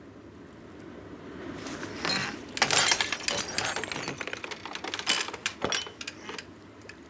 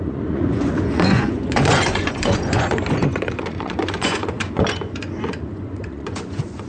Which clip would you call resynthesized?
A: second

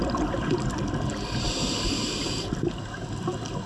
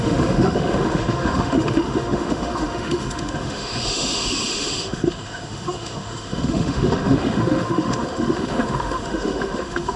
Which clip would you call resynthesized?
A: second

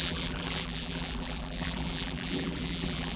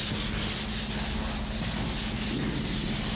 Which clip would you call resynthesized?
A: first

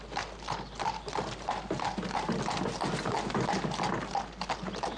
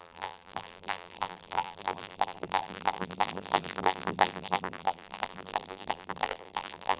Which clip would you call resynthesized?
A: second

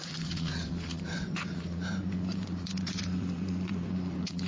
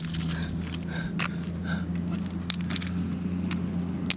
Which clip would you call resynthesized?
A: first